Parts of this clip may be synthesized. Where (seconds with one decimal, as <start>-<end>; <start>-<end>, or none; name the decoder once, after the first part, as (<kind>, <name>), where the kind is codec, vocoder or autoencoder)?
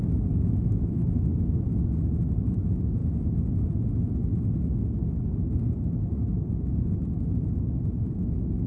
0.0-1.3 (autoencoder, DAC-VAE); 2.5-3.0; 8.2-8.7